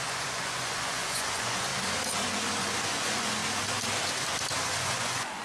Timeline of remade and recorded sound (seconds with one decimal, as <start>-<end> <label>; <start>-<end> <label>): 0.0-1.7 remade; 1.7-2.6 recorded; 2.6-3.4 remade; 3.4-4.6 recorded; 4.6-5.4 remade